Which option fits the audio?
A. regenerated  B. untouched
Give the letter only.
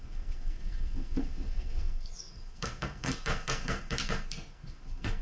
A